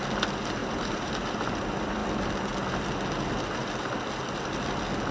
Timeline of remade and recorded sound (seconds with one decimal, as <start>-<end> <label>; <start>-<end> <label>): 0.0-0.6 recorded; 0.6-1.1 remade; 1.1-5.1 recorded